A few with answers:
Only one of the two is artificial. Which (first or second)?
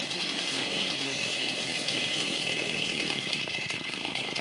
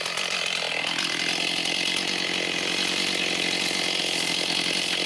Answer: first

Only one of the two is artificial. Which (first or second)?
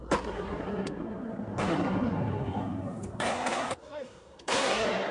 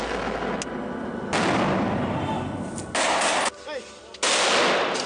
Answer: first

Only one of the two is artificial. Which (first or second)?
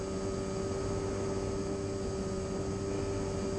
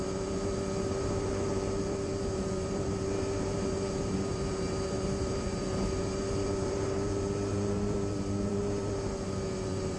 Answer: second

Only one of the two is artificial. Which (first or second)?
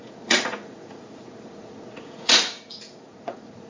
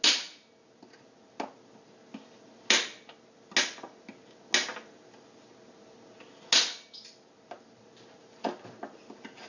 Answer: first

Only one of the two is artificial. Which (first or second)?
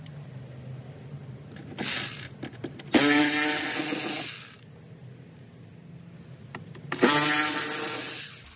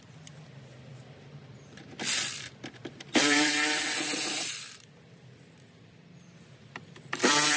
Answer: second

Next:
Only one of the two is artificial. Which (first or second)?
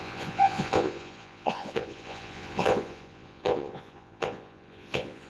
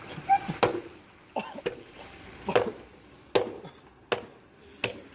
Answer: first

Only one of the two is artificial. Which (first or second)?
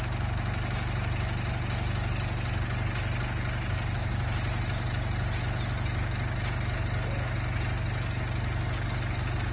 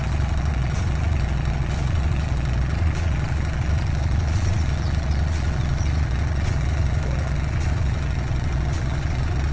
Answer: second